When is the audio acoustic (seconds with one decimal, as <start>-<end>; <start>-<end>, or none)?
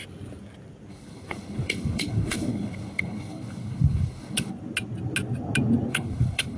0.0-0.9; 4.5-5.9